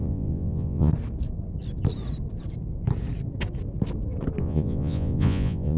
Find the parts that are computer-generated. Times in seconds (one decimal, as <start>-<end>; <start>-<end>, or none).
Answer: 0.0-0.9; 4.4-5.8